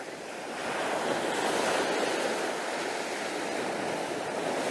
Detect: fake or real real